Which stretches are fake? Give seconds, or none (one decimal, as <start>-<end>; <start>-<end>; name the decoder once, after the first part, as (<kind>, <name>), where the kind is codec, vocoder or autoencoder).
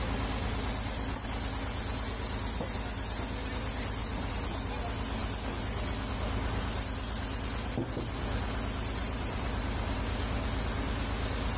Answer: 4.0-4.8 (vocoder, BigVGAN v2); 9.0-10.0